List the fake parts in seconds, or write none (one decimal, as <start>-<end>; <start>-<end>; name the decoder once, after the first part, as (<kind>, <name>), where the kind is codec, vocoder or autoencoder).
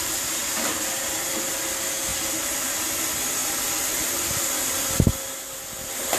0.0-6.2 (vocoder, BigVGAN v2)